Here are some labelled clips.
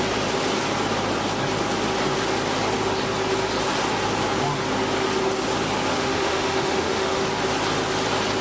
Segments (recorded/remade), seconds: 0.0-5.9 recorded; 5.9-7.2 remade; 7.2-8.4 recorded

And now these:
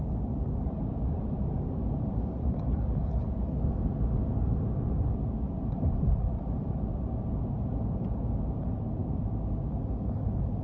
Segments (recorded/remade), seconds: 0.0-10.6 recorded